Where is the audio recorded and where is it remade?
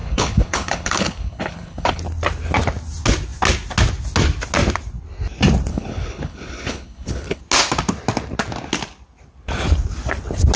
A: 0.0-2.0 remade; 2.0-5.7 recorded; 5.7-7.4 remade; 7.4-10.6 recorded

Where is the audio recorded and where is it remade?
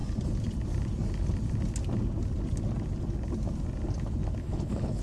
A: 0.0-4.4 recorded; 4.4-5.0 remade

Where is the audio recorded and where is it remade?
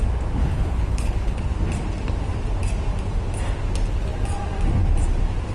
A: 0.0-0.4 recorded; 0.4-1.5 remade; 1.5-5.5 recorded